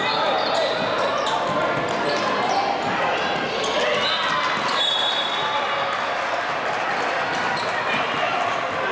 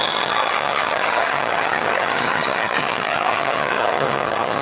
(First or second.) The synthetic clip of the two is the second